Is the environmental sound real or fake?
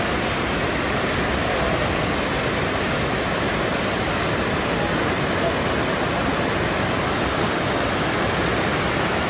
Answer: real